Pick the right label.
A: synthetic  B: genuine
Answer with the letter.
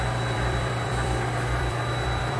A